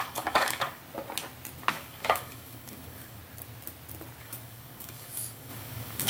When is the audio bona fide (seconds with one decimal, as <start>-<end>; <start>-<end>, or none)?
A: 0.8-1.7; 3.2-4.2